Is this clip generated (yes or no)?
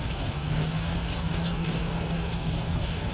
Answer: yes